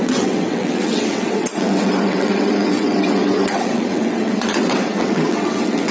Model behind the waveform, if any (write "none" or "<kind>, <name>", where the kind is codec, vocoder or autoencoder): vocoder, WaveNeXt